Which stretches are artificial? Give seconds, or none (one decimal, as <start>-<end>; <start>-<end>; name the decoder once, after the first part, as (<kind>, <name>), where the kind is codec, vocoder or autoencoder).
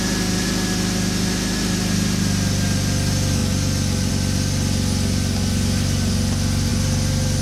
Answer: none